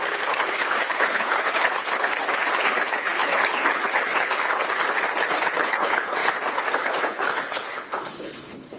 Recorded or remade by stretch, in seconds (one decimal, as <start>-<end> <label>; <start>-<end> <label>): 0.0-4.8 remade; 4.8-5.3 recorded; 5.3-8.8 remade